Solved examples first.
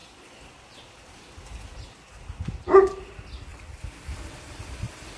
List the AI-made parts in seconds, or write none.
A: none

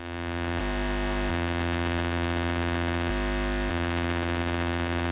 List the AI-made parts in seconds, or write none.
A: 0.0-0.6; 1.3-3.1; 3.7-5.1

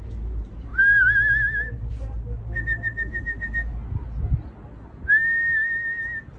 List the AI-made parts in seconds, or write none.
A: none

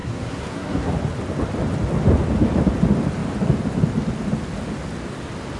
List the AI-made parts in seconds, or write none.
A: 0.0-0.9

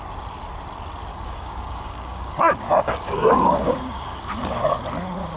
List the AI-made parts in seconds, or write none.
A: 1.1-4.2